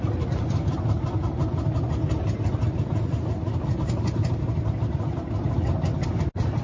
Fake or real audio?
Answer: real